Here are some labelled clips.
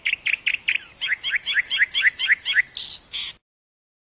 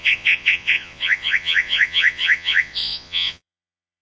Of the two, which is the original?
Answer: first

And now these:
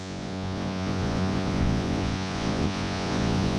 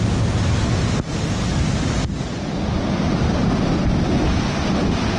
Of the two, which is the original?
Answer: second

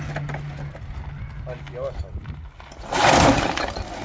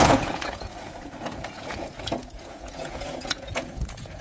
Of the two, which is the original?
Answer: first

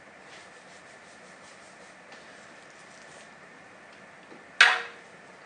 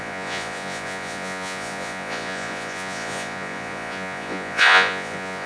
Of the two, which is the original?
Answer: first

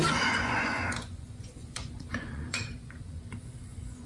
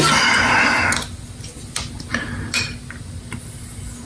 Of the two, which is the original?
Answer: second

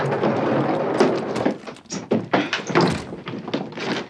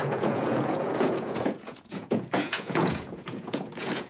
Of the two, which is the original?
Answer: first